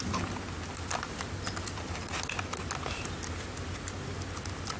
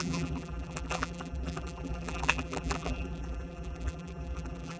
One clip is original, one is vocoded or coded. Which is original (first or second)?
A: first